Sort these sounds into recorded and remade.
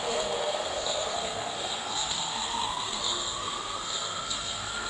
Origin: remade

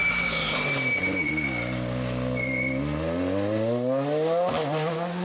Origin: recorded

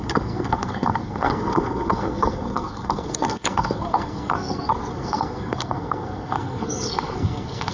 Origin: remade